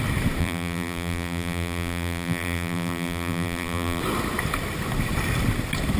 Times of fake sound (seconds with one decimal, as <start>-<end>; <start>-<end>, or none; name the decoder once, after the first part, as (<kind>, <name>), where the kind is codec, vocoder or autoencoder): 0.4-4.0 (vocoder, BigVGAN v2)